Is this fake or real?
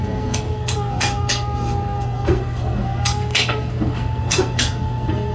fake